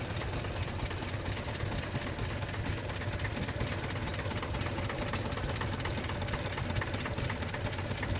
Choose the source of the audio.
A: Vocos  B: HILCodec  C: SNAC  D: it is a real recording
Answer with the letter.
D